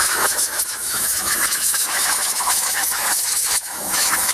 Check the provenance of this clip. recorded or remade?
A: remade